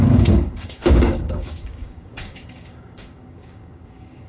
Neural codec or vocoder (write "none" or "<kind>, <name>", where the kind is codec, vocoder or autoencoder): codec, DAC